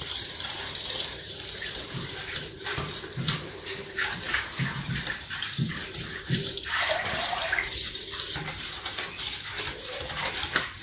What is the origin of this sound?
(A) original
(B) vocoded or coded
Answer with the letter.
B